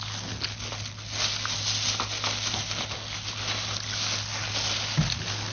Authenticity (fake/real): real